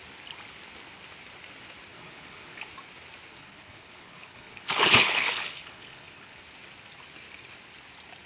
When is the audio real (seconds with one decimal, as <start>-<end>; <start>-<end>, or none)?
0.0-1.9; 2.7-3.3; 6.4-8.3